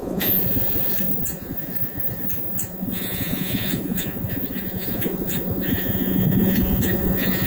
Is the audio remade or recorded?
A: remade